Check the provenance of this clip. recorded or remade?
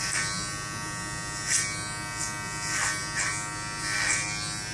recorded